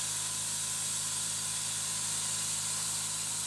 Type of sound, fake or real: fake